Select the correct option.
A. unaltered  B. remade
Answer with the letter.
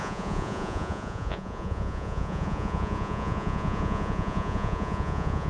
B